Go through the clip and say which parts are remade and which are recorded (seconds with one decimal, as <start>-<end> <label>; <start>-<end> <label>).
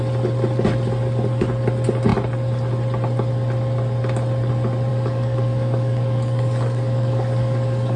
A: 0.0-4.9 recorded; 4.9-8.0 remade